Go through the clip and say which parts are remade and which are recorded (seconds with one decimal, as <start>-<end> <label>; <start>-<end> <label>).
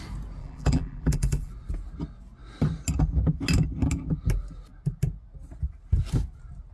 0.0-0.4 recorded; 0.4-1.5 remade; 1.5-6.7 recorded